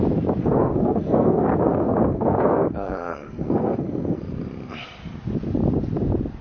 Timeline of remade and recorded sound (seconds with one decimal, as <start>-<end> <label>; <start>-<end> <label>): 0.0-0.4 recorded; 0.4-4.2 remade; 4.2-6.4 recorded